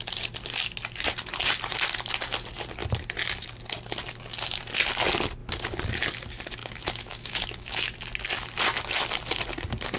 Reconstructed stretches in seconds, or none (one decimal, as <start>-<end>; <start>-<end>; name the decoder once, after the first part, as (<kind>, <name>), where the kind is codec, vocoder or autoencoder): 6.6-7.9 (autoencoder, DAC-VAE)